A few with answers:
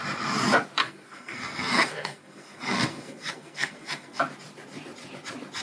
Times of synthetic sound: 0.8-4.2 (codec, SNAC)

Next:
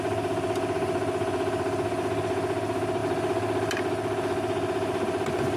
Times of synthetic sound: none

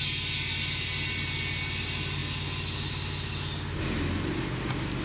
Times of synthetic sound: none

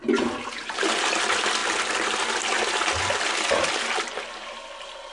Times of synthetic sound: none

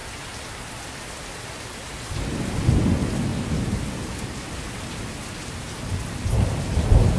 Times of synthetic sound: none

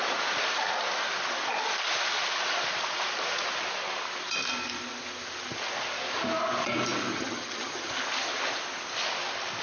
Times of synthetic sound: 7.1-7.9 (vocoder, HiFi-GAN)